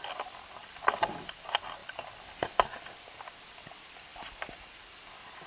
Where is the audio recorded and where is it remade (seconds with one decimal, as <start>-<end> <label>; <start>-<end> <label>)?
0.0-1.8 recorded; 1.8-3.2 remade; 3.2-5.5 recorded